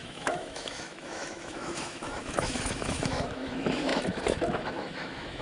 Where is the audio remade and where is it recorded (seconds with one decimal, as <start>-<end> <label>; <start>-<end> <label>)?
0.0-5.4 remade